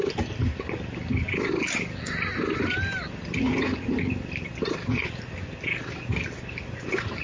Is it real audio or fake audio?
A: real